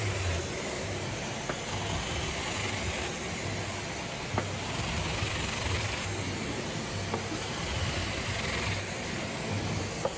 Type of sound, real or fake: real